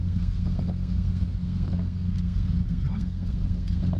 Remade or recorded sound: remade